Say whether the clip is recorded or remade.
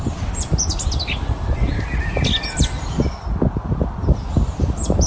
recorded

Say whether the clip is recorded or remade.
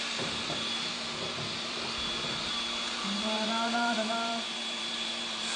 remade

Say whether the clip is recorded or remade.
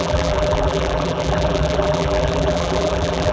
remade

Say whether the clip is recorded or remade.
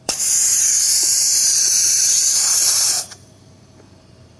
remade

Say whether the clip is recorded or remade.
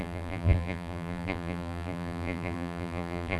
remade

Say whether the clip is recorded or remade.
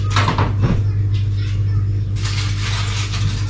recorded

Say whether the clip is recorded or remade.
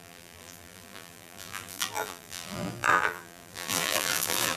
remade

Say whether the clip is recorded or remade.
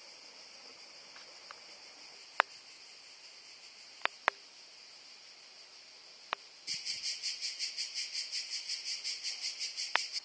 recorded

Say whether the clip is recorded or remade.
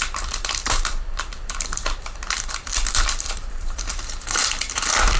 remade